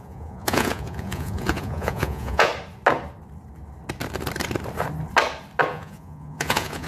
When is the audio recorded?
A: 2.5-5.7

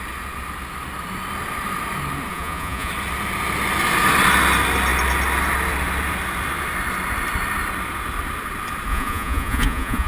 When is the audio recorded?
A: 0.0-2.3; 2.9-8.9

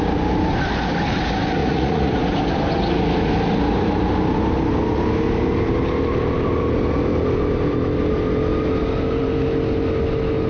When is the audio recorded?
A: 0.0-1.6; 2.1-10.5

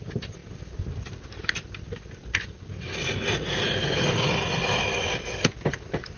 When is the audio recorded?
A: 0.0-6.2